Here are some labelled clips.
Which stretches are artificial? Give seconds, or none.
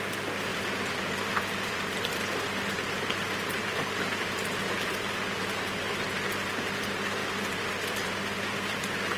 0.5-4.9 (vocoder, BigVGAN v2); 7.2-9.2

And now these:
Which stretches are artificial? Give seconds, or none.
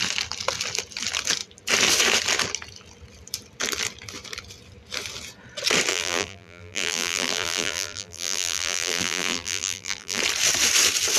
5.9-10.2 (vocoder, BigVGAN v2)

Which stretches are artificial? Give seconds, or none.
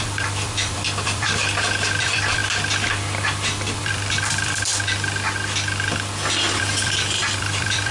0.0-1.4 (vocoder, BigVGAN v2); 2.0-2.4; 3.8-4.7; 6.6-7.9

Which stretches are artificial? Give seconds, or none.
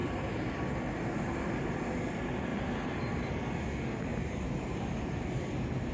0.0-0.6 (vocoder, BigVGAN v2); 2.5-3.3; 4.1-5.9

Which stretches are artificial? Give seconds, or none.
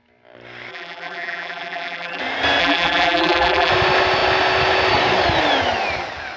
0.7-2.2 (vocoder, BigVGAN v2); 2.6-3.7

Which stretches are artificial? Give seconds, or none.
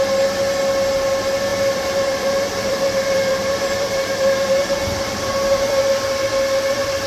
1.5-5.8 (vocoder, BigVGAN v2)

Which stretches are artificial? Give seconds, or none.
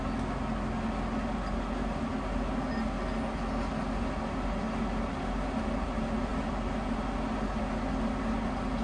none